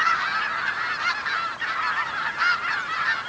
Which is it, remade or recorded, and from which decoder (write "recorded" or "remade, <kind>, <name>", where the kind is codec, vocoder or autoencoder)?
recorded